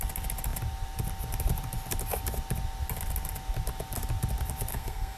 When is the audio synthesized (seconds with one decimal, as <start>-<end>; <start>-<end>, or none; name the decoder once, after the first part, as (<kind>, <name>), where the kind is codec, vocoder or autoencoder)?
4.7-5.2 (codec, SNAC)